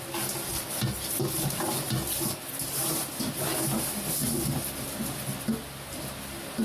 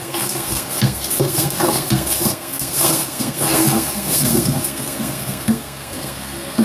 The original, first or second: first